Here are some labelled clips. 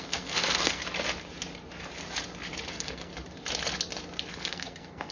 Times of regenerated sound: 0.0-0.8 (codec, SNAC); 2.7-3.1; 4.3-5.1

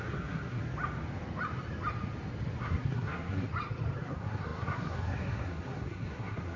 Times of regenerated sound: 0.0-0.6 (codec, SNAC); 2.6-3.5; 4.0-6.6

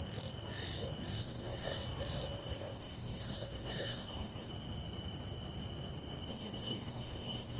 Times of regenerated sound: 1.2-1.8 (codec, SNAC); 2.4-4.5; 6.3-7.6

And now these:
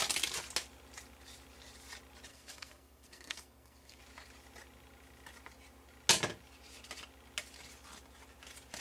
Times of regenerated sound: 2.3-4.0 (codec, SNAC)

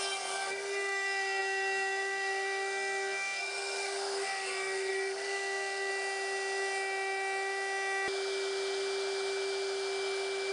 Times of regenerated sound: 0.0-5.9 (codec, SNAC)